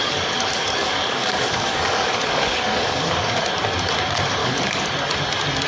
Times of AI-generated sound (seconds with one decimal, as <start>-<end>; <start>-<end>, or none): 0.0-3.4; 4.4-4.9